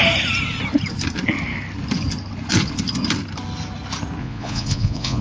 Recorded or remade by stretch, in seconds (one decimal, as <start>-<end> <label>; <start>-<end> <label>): 0.0-4.2 recorded; 4.2-5.2 remade